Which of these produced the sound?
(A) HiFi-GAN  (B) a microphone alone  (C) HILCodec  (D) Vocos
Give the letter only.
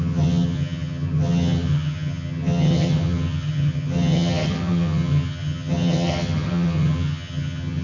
A